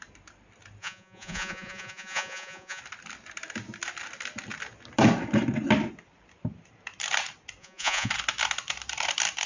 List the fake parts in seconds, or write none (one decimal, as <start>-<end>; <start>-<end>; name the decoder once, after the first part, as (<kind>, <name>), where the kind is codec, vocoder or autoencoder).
0.8-2.8 (vocoder, Vocos); 7.6-8.1